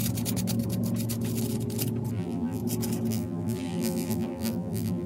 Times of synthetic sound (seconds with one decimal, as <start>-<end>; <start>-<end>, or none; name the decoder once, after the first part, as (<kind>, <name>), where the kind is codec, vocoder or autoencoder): 2.1-2.6 (vocoder, BigVGAN v2); 3.1-5.1